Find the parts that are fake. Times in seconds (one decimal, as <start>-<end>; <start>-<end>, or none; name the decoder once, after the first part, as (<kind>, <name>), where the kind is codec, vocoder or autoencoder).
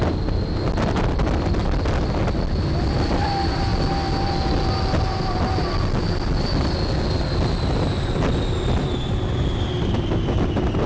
none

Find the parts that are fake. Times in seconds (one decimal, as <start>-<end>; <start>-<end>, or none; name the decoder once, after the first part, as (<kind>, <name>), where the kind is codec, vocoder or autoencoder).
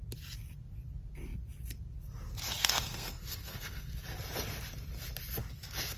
2.6-4.0 (codec, SNAC)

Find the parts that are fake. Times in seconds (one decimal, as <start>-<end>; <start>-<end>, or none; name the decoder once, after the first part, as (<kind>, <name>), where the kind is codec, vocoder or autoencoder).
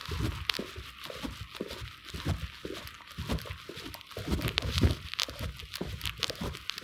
none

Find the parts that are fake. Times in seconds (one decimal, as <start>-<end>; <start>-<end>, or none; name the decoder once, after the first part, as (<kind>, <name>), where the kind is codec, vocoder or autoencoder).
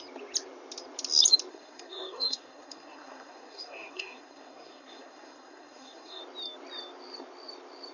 1.5-6.2 (codec, SNAC)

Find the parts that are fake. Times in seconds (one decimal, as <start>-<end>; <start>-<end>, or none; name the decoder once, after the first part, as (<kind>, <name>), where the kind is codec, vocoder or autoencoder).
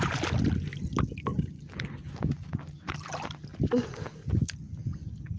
none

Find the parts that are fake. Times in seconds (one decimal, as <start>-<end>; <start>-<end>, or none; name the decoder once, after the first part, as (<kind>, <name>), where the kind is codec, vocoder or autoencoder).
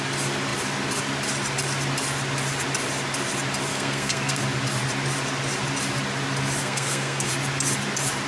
3.7-4.4 (codec, SNAC); 6.6-7.3